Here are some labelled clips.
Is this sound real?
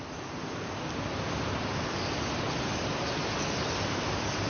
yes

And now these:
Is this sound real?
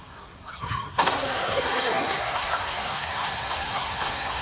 no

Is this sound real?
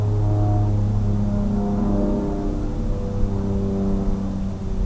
yes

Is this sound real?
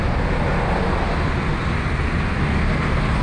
yes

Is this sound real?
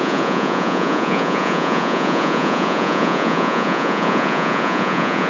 no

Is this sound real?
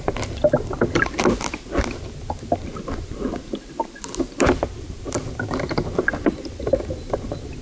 yes